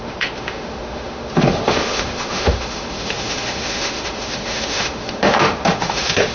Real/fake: fake